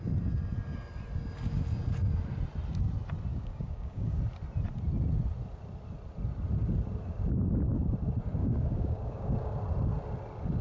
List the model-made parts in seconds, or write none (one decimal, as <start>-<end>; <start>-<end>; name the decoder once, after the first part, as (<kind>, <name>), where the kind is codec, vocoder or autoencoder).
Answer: 3.3-4.2 (codec, DAC); 8.4-9.6